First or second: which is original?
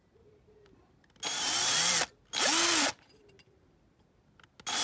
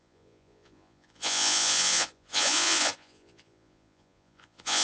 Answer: first